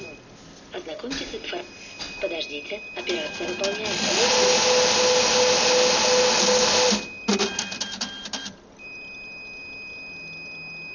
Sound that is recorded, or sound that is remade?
recorded